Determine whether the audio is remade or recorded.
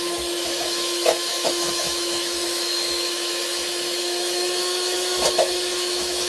remade